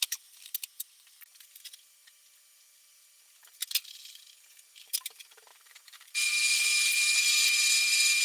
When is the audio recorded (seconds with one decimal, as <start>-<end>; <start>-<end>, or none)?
none